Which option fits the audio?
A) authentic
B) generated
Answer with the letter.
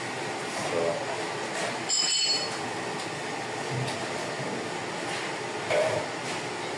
A